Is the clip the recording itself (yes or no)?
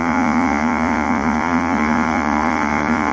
no